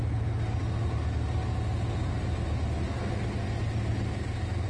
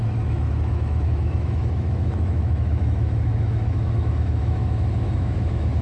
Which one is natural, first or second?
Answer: first